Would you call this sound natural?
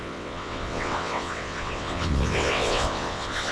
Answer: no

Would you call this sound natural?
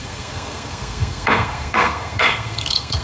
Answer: no